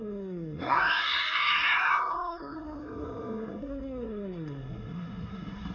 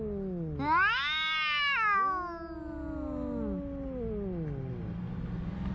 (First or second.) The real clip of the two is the second